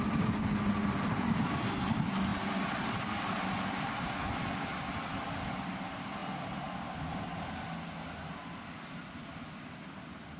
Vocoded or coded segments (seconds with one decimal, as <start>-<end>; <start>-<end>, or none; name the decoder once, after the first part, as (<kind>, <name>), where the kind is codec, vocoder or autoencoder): none